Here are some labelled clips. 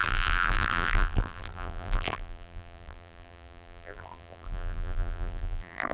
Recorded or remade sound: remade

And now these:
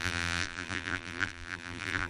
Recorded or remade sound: remade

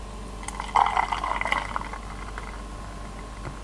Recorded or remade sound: recorded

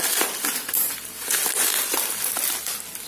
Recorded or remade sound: recorded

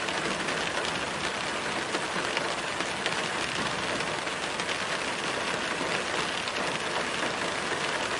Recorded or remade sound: recorded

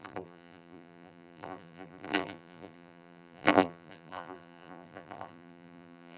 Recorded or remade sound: remade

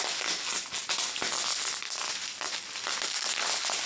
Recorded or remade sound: recorded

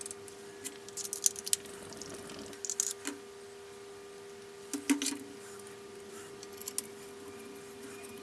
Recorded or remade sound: recorded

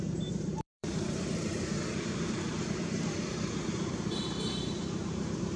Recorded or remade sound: remade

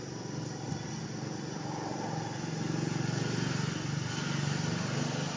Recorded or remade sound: recorded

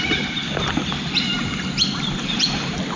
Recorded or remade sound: recorded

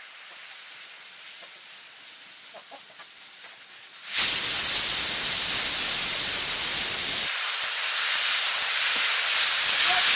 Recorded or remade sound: recorded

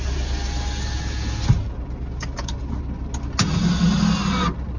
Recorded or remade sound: recorded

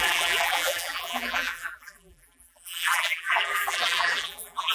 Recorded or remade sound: remade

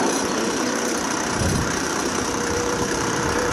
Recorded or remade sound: remade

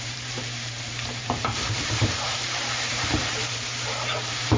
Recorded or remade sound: remade